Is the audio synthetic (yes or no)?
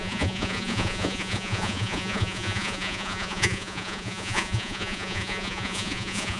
yes